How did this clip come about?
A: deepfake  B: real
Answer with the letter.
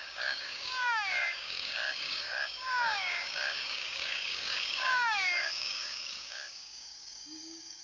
A